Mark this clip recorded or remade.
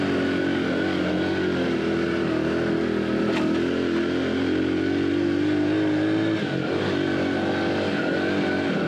recorded